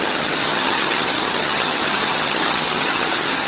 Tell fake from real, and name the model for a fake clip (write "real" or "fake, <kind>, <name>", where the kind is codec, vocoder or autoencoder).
fake, vocoder, HiFi-GAN